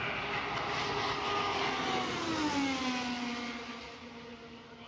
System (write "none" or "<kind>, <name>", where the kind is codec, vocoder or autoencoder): none